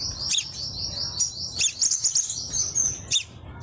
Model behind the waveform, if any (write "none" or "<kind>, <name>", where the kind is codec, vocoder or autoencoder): none